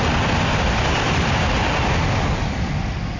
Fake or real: real